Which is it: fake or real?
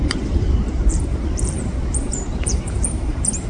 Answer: fake